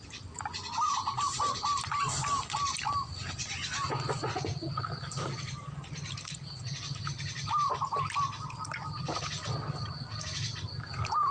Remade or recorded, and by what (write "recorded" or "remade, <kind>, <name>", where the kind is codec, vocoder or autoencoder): recorded